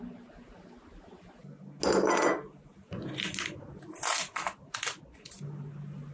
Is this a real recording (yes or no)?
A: yes